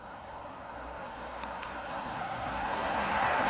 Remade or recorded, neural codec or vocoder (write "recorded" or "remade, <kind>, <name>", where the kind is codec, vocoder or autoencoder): remade, codec, SNAC